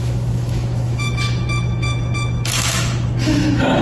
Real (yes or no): no